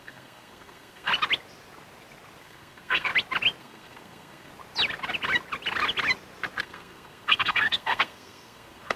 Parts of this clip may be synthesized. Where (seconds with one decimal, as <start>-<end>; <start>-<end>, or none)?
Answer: 0.0-1.1; 2.4-3.1; 3.6-4.5; 6.6-9.0